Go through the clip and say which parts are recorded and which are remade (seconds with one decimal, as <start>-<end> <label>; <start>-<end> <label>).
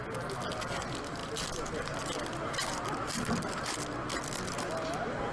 0.0-5.3 recorded